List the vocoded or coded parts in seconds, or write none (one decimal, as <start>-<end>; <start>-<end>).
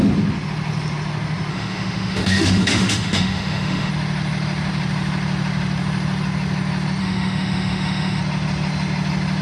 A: 1.5-3.9; 7.0-8.2